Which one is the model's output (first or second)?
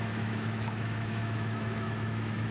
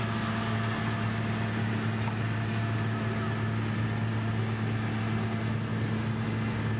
first